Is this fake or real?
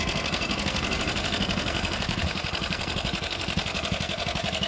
fake